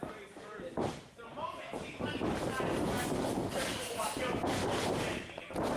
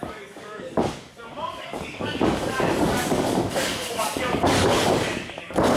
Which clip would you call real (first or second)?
first